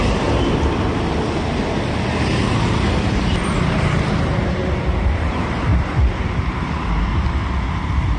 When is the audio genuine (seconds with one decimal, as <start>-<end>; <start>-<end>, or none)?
0.0-2.5; 4.2-5.7